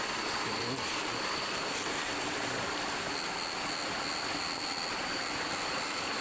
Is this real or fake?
real